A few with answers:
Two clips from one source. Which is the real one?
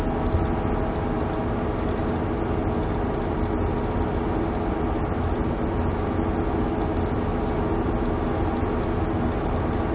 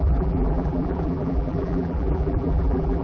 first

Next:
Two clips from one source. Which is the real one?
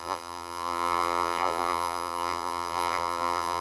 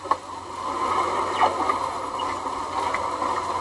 second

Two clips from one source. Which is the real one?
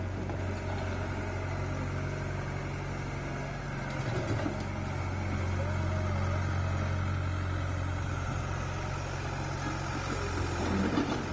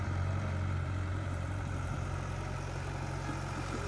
first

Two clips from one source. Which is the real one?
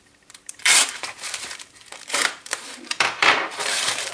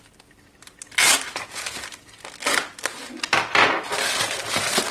second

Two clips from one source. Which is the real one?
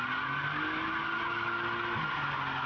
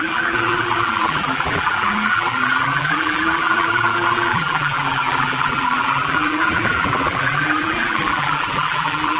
first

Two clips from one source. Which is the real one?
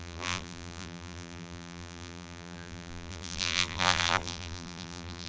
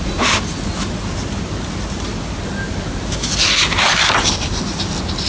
second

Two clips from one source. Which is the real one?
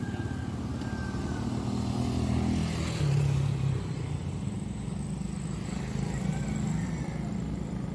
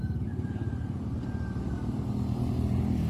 first